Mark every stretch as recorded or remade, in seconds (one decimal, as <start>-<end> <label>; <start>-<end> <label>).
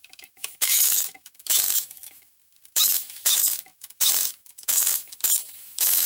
0.0-6.1 remade